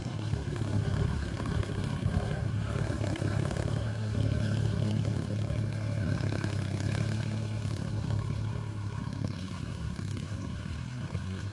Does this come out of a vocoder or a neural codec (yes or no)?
yes